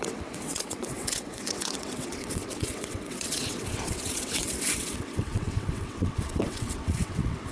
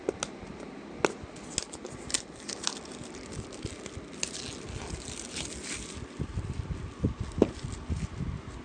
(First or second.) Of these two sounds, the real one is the second